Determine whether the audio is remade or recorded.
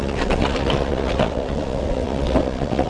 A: remade